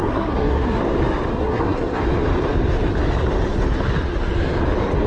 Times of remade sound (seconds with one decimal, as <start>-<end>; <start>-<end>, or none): 0.0-0.8; 1.3-2.0

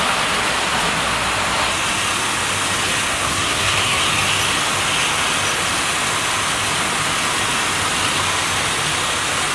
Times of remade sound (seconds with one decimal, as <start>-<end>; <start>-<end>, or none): 3.1-4.1

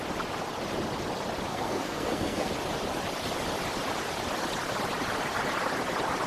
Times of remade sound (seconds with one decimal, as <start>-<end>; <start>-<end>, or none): 1.5-2.5

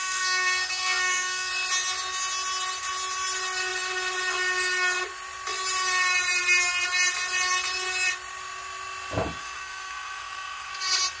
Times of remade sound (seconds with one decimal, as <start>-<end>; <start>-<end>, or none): 0.0-1.5; 9.4-10.7

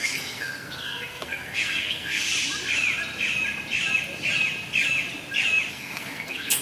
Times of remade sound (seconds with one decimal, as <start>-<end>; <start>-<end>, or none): 0.0-2.3; 5.7-6.6

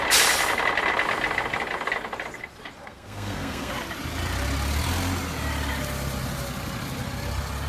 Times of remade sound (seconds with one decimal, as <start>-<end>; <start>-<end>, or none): 2.8-3.7